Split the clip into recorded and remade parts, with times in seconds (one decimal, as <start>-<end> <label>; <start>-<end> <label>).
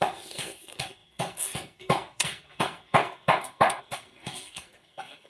0.0-5.3 remade